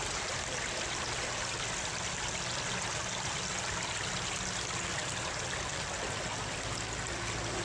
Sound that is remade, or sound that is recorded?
recorded